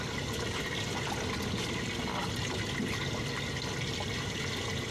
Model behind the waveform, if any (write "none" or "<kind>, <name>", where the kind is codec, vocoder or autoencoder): none